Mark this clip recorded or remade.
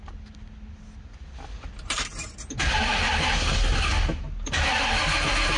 recorded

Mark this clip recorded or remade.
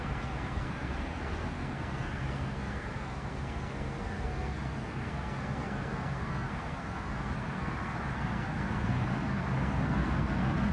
remade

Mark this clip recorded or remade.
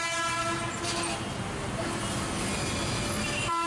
recorded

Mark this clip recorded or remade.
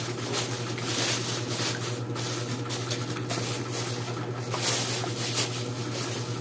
recorded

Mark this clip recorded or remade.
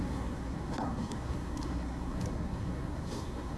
remade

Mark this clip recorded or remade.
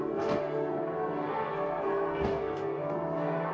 remade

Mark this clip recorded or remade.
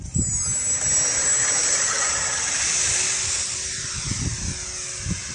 recorded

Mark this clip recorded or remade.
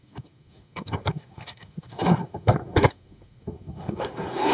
remade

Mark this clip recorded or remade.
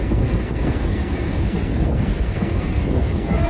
remade